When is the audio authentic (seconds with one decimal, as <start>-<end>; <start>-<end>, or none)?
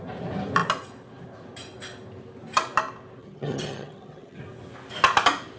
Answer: 0.0-3.2; 4.4-5.6